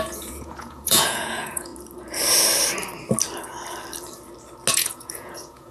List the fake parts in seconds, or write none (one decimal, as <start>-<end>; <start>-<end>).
0.0-1.7; 4.7-5.7

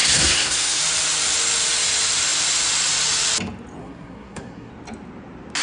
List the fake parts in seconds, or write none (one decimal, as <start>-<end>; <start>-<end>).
0.0-0.8; 3.8-4.7

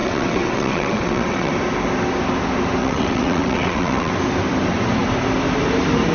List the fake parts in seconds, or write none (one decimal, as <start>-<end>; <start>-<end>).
0.0-1.5; 2.8-4.1

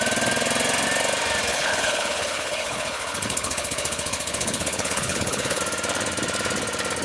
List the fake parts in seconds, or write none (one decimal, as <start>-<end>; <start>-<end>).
1.5-5.6

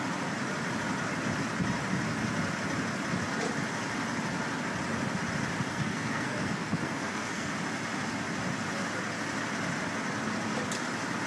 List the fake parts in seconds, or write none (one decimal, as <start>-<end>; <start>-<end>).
5.7-7.5

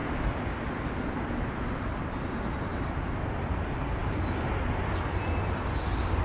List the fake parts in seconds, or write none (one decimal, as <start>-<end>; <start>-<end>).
none

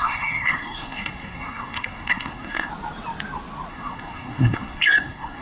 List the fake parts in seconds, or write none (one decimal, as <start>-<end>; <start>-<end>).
0.0-2.7; 3.7-5.4

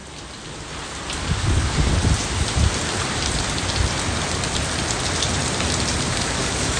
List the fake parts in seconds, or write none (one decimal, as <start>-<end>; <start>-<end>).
1.2-1.9; 6.0-6.8